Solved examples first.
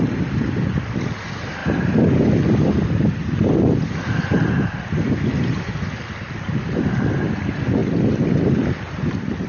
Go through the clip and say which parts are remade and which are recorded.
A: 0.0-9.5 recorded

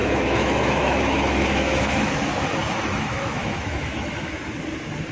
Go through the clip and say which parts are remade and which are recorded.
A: 0.0-2.1 remade; 2.1-2.6 recorded; 2.6-4.4 remade; 4.4-5.1 recorded

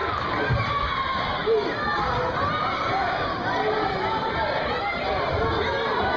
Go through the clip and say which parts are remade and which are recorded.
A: 0.0-0.7 remade; 0.7-1.4 recorded; 1.4-2.1 remade; 2.1-2.6 recorded; 2.6-5.4 remade; 5.4-6.2 recorded

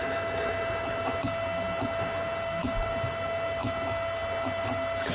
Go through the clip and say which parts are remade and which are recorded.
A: 0.0-5.1 recorded

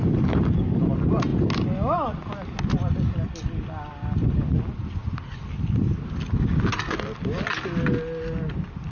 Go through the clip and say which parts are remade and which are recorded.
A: 0.0-8.9 recorded

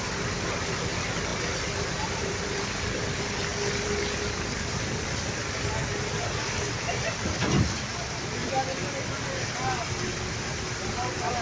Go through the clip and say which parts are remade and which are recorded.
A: 0.0-11.4 recorded